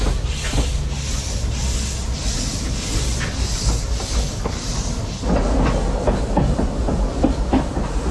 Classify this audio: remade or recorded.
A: recorded